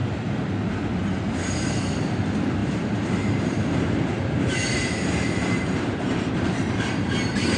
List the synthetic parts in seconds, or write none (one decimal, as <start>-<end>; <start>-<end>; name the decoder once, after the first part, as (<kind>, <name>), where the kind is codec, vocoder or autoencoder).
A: 2.6-7.6 (vocoder, BigVGAN v2)